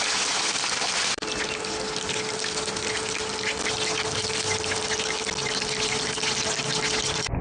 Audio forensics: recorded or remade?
recorded